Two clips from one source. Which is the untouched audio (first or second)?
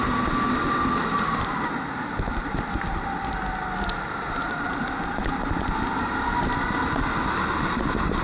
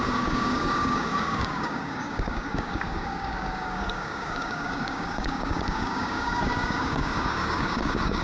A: first